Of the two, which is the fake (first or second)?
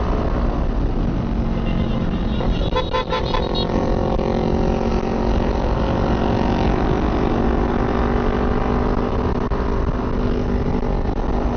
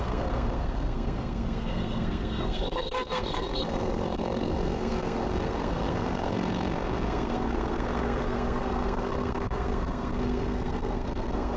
second